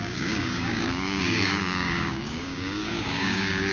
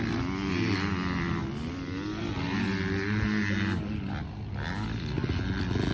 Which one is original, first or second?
second